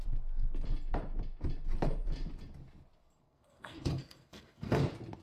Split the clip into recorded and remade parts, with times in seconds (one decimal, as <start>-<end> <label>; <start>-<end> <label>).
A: 0.0-3.0 recorded; 3.0-4.8 remade; 4.8-5.2 recorded